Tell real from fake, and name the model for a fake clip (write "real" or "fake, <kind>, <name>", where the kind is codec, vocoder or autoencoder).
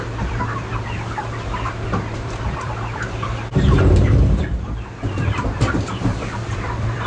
fake, vocoder, BigVGAN v2